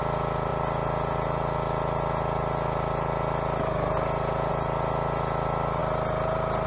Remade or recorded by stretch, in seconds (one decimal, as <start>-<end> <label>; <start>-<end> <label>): 0.0-6.7 recorded